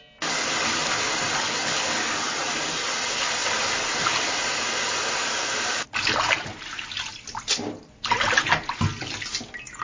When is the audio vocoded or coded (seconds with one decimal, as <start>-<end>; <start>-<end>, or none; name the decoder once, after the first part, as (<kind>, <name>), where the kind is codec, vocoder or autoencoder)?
3.4-7.0 (vocoder, BigVGAN v2)